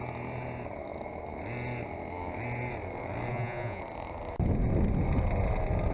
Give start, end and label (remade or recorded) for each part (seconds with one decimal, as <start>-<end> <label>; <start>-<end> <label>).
0.0-3.3 recorded; 3.3-3.8 remade; 3.8-5.9 recorded